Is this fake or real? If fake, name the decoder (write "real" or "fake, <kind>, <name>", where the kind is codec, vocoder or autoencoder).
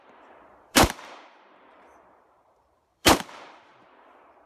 fake, vocoder, BigVGAN v2